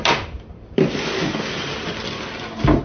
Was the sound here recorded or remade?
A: recorded